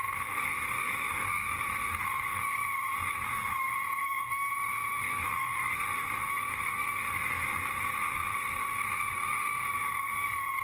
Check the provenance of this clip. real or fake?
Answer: fake